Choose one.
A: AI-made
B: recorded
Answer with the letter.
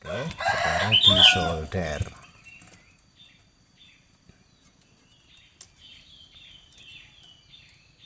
B